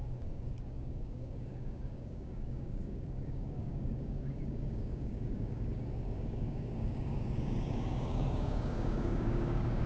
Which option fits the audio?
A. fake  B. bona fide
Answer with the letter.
A